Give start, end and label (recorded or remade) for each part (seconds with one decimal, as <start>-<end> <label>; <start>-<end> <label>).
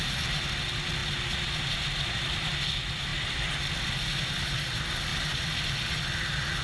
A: 0.0-6.6 recorded